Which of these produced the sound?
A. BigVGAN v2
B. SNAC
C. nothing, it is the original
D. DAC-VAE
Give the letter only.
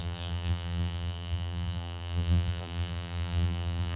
A